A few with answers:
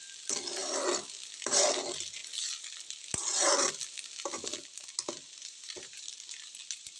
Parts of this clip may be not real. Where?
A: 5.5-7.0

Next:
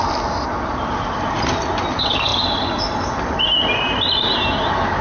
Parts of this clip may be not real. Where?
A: none

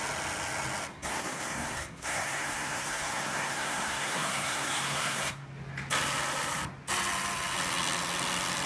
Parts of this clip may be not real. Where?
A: 0.9-5.5

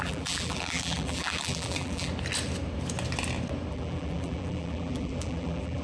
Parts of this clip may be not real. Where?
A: 0.0-2.1; 3.7-5.8

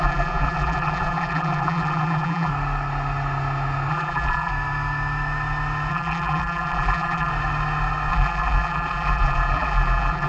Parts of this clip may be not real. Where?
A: 0.0-2.5; 3.9-4.5; 5.9-7.3; 8.1-10.3

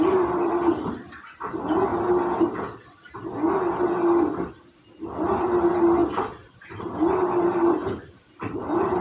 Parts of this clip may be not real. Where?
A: 0.0-1.9; 4.5-9.0